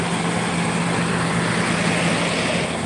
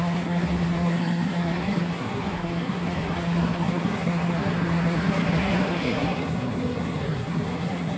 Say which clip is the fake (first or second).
second